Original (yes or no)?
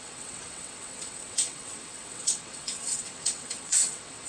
no